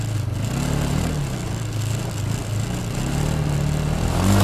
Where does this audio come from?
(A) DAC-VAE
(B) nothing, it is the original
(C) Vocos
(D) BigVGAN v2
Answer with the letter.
B